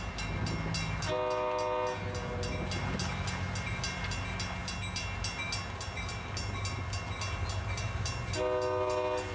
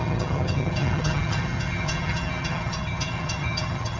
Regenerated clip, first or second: second